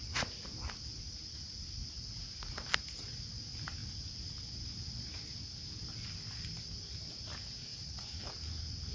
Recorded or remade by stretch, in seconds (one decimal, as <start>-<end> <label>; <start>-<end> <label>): 0.0-7.7 recorded; 7.7-8.2 remade; 8.2-8.9 recorded